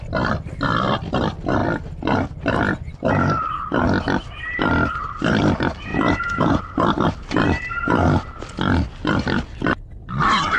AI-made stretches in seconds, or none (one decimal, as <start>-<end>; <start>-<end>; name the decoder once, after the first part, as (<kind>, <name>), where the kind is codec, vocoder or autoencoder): 5.9-6.6 (vocoder, Vocos)